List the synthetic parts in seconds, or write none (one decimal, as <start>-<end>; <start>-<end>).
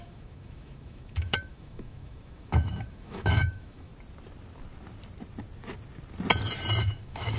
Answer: 0.0-3.9; 6.8-7.4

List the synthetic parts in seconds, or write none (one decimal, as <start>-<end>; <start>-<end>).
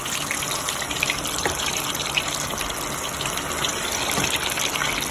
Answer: none